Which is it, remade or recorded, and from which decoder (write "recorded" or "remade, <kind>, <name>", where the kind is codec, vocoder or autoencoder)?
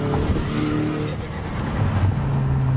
recorded